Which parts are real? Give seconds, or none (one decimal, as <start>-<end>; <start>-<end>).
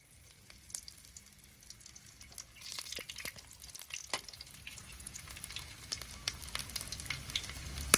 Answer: 0.0-4.7; 5.3-8.0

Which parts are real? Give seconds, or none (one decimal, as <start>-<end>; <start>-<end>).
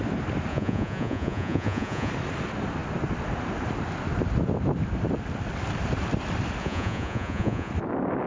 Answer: 0.0-0.5; 2.1-6.6; 7.7-8.3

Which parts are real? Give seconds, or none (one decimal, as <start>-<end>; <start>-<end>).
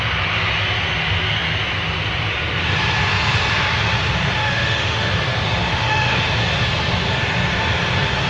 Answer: 0.0-4.4; 5.1-5.7; 6.3-8.3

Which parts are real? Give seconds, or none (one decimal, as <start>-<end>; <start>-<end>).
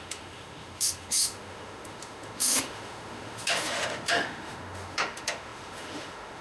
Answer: none